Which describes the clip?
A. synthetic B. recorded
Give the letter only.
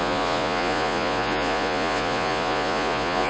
A